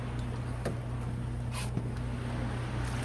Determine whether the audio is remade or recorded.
recorded